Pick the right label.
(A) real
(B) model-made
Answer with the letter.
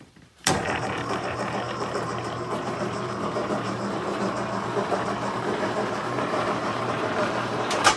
B